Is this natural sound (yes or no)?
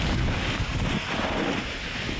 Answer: yes